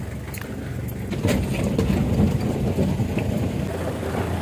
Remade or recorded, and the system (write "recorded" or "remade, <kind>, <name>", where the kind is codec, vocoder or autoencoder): recorded